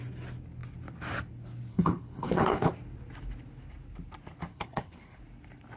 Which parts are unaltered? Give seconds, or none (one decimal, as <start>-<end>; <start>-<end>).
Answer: 0.0-1.7; 2.7-4.5; 5.2-5.8